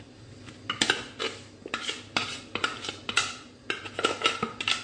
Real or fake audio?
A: real